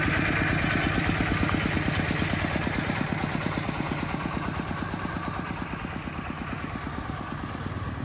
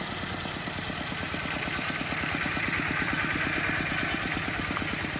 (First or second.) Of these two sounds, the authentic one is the first